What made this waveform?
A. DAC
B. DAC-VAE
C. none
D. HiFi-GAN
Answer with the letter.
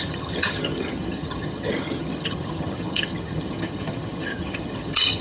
D